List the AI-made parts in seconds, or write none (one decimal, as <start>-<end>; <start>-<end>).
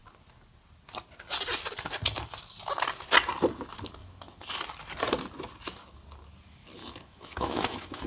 6.8-8.1